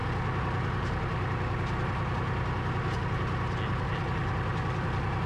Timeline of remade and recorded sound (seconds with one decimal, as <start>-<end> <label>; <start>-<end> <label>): 0.0-5.3 recorded